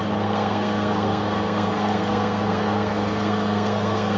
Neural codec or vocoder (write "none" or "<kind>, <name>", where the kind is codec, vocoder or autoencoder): codec, SNAC